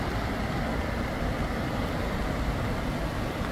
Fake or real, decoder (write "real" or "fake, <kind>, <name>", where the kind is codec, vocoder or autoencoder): real